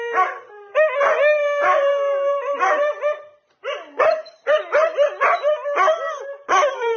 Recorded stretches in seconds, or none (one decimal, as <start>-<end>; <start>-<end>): none